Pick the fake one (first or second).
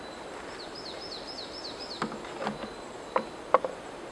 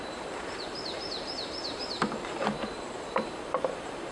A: second